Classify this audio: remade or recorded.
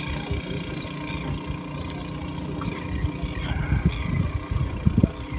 recorded